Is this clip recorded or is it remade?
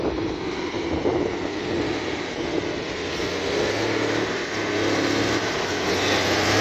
recorded